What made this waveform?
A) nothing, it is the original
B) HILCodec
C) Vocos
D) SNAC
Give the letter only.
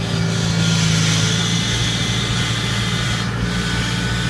A